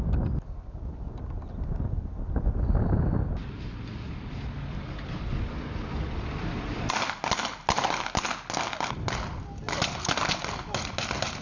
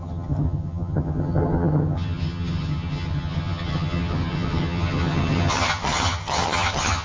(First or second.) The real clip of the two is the first